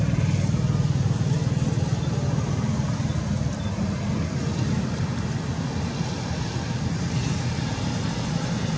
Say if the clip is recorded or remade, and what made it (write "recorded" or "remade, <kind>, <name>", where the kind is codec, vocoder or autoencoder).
recorded